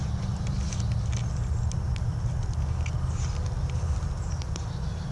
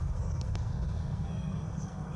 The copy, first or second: second